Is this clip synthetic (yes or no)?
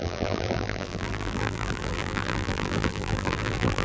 yes